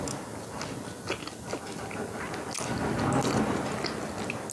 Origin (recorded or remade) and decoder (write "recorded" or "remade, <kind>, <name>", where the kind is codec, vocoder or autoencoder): recorded